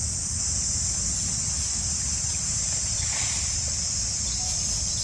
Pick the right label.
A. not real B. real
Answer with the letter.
B